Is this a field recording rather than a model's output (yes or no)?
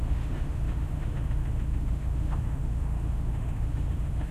no